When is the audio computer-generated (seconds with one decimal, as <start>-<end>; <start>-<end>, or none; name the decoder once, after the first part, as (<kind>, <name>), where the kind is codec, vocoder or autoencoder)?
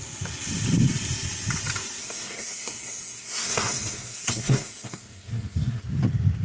2.0-5.8 (codec, SNAC)